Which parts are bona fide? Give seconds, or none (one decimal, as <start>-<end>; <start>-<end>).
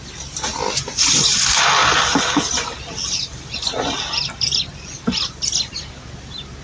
0.0-6.6